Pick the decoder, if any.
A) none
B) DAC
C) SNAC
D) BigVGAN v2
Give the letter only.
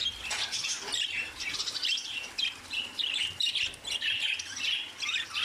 A